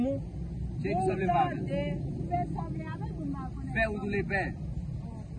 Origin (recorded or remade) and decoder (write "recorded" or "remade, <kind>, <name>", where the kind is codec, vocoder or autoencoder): recorded